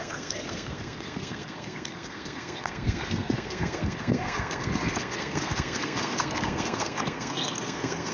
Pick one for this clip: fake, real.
fake